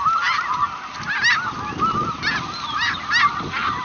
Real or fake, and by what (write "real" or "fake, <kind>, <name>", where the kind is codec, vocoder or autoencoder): real